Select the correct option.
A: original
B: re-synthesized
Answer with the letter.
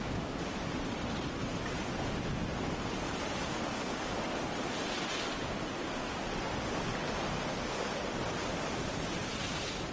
A